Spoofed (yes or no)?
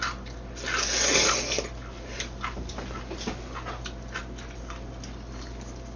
no